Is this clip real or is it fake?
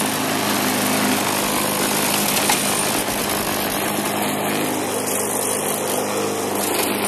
real